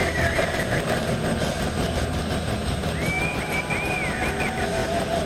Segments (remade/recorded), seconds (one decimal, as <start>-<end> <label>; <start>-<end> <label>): 0.0-4.8 recorded; 4.8-5.3 remade